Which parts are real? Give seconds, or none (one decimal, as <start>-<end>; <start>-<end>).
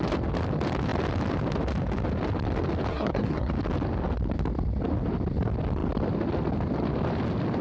0.0-2.9; 3.5-7.6